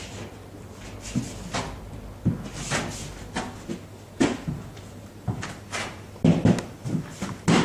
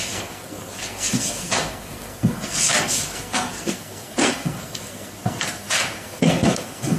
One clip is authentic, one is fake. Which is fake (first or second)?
second